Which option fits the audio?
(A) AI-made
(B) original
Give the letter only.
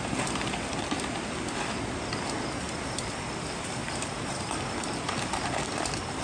B